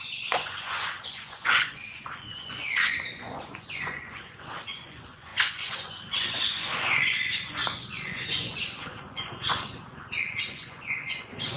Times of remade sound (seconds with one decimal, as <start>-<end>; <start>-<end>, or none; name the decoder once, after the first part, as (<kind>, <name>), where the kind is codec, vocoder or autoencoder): 0.0-11.6 (vocoder, Vocos)